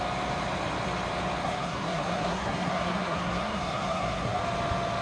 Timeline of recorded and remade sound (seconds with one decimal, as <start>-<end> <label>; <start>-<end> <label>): 0.0-1.4 recorded; 1.4-4.4 remade; 4.4-5.0 recorded